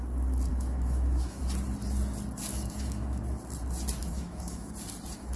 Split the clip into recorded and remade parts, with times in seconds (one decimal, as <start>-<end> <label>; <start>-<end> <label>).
0.0-0.5 recorded; 0.5-1.4 remade; 1.4-2.5 recorded; 2.5-3.2 remade; 3.2-4.0 recorded; 4.0-4.7 remade; 4.7-5.4 recorded